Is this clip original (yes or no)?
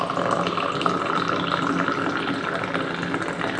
yes